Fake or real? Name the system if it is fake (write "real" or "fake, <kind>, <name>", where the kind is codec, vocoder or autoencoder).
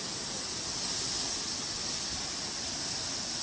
real